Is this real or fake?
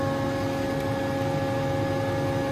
real